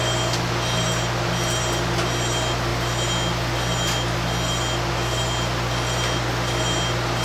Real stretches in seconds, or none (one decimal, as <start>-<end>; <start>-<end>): 0.0-7.2